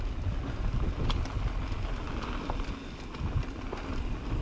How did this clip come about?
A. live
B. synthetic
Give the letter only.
A